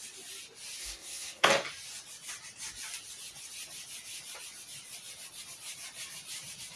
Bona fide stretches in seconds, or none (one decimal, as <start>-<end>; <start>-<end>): 0.0-0.8; 1.5-6.8